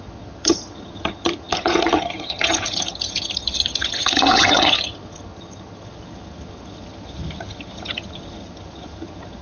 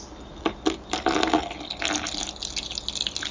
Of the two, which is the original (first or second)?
second